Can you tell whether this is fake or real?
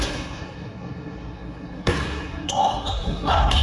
fake